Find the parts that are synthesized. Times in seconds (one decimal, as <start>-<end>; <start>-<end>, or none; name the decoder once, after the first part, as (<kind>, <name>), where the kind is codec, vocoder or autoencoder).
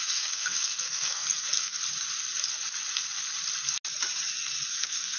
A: 0.0-1.8 (codec, SNAC); 4.7-5.2